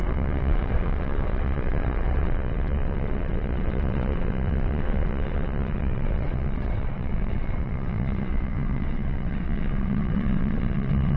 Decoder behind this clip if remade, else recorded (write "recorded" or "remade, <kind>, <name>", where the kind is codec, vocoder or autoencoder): remade, vocoder, WaveNeXt